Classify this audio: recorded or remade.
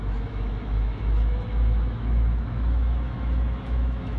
remade